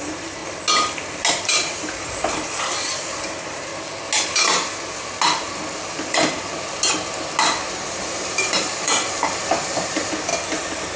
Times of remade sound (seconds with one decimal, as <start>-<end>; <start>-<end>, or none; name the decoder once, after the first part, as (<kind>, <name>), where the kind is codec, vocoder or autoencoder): 0.0-0.4 (vocoder, BigVGAN v2); 1.3-3.7; 7.6-10.3